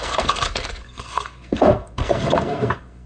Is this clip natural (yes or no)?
no